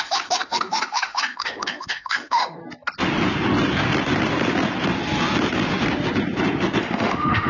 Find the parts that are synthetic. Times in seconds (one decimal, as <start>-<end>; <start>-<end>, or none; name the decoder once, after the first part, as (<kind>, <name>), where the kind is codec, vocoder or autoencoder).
0.0-2.6 (autoencoder, DAC-VAE); 6.8-7.5